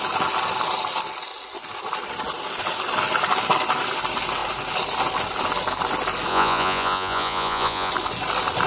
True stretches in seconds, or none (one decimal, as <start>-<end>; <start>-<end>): 0.0-6.3; 7.9-8.7

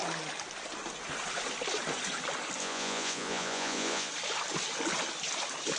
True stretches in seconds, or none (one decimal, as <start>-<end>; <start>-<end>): 0.0-2.6; 4.1-5.8

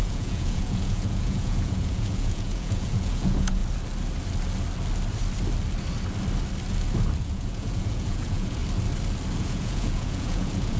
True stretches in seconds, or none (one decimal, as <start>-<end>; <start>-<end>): 3.6-7.2; 8.6-9.4

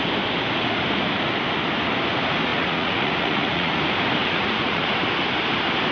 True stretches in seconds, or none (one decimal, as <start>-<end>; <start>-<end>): 0.0-2.5; 3.8-4.2; 4.9-5.9

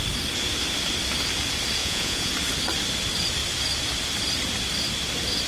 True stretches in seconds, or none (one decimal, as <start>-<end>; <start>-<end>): 0.0-1.8; 2.3-5.5

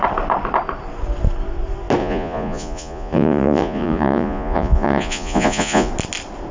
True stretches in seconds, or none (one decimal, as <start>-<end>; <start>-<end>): 0.0-2.0; 5.9-6.5

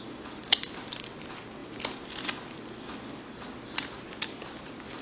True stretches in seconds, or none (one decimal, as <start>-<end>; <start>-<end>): 0.0-5.0